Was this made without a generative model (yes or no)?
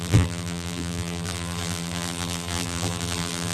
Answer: no